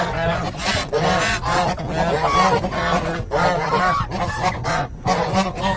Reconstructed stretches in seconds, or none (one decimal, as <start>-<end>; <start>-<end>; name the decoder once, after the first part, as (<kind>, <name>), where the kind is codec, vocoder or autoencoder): 0.0-0.8 (vocoder, Vocos); 4.3-5.8